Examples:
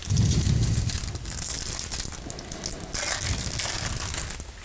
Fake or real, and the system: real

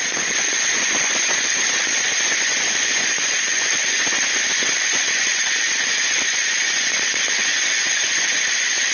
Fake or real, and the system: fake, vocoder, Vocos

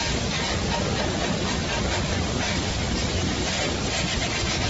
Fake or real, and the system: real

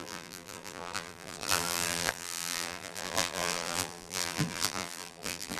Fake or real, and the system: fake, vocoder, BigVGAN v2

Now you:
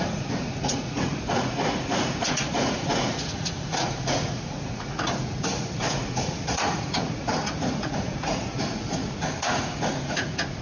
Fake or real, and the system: fake, vocoder, Vocos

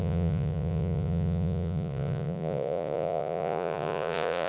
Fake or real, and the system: fake, vocoder, Vocos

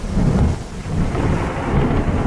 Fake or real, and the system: real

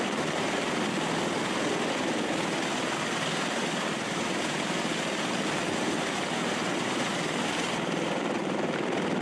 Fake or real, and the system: real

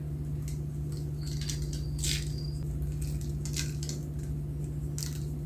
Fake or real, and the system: real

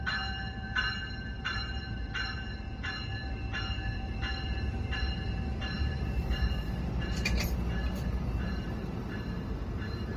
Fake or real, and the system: fake, vocoder, BigVGAN v2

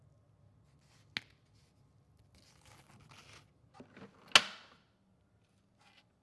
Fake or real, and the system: real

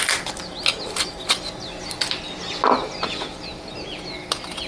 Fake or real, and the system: real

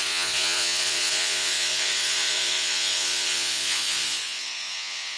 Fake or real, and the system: fake, vocoder, Vocos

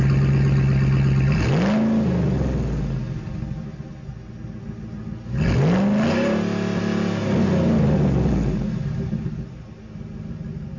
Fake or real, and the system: real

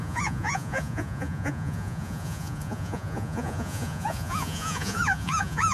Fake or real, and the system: fake, vocoder, Vocos